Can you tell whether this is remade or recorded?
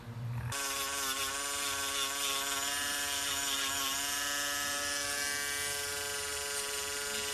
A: recorded